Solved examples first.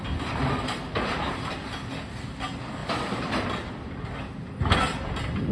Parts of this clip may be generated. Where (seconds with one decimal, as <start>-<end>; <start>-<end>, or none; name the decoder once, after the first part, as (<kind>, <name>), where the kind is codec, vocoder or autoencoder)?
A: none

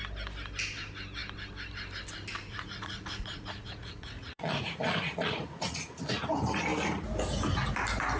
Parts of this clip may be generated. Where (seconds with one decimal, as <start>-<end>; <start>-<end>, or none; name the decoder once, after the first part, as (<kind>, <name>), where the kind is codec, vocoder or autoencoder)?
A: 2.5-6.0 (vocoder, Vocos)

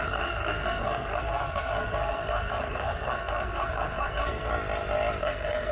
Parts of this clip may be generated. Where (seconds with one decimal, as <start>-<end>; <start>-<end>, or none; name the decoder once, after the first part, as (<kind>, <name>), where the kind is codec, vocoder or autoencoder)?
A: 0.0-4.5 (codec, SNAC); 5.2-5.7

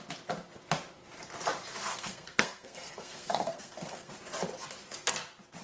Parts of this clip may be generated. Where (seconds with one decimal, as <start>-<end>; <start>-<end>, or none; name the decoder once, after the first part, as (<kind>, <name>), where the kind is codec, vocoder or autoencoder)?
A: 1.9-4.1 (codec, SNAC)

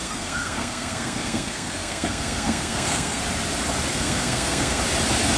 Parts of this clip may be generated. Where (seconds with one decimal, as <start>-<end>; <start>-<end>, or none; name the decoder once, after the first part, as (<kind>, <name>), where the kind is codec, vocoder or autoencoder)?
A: 0.0-3.2 (codec, SNAC); 3.9-4.8